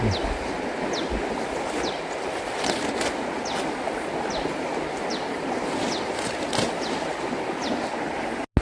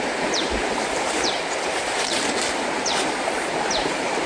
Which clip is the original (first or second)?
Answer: first